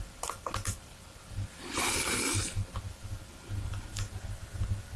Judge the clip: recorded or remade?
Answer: recorded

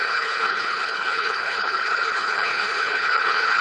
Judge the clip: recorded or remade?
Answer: remade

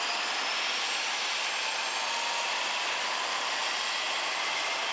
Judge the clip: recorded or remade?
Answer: recorded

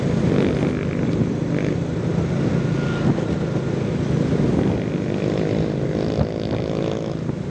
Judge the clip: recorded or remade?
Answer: recorded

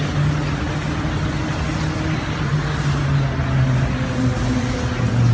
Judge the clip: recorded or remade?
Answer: recorded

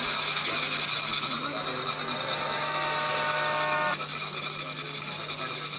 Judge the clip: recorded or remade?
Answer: recorded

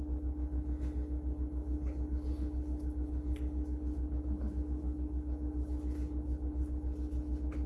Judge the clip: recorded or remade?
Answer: remade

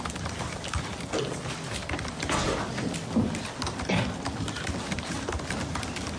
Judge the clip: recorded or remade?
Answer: recorded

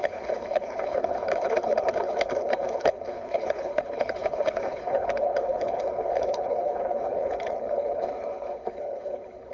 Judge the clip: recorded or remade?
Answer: remade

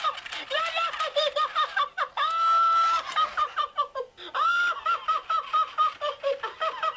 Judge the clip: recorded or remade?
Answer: recorded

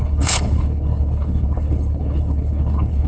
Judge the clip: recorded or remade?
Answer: remade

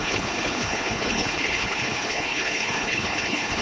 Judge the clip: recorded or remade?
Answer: remade